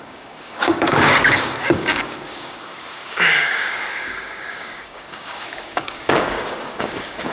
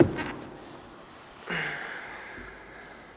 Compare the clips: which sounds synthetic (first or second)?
first